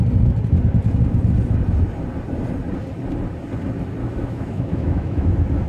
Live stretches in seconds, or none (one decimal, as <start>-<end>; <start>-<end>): 0.0-4.0; 5.3-5.7